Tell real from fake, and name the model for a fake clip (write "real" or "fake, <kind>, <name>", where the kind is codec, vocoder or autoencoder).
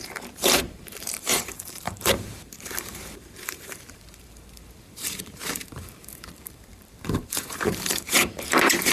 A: fake, vocoder, BigVGAN v2